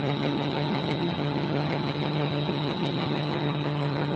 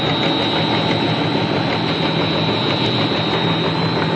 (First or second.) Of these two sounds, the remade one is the first